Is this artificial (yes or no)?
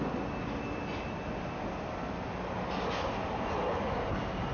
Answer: no